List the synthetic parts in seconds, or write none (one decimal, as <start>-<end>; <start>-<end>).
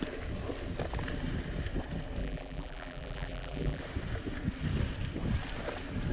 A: 2.2-3.8